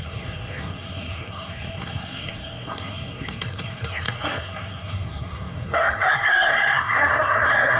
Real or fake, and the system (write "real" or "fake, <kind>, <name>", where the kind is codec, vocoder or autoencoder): fake, codec, SNAC